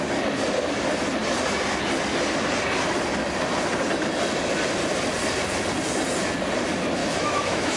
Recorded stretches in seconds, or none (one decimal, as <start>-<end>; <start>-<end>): 0.0-7.0